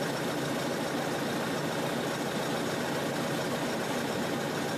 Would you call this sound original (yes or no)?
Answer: yes